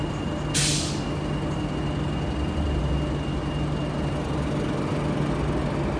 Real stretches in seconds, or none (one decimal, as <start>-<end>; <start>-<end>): 0.0-6.0